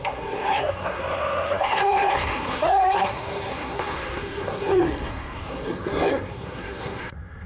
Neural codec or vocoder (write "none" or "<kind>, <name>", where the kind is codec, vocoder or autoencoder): codec, SNAC